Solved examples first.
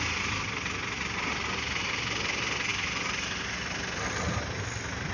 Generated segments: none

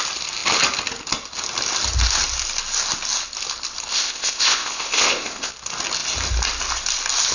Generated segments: 3.9-5.5 (codec, ZipCodec)

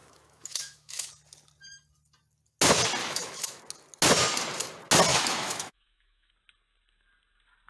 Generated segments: 0.0-1.1 (autoencoder, DAC-VAE); 3.0-3.6; 5.1-6.3

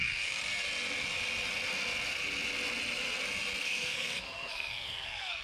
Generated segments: 0.0-0.4 (codec, SNAC); 3.6-5.4

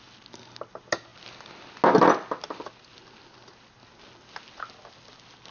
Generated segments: none

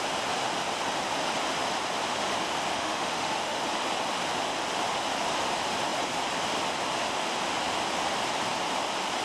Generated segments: 2.7-3.6 (autoencoder, DAC-VAE)

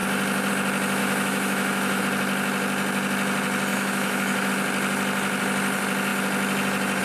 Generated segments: 1.0-2.0 (autoencoder, DAC-VAE); 3.7-4.5